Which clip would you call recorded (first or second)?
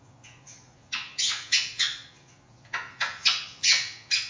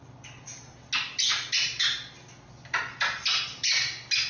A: second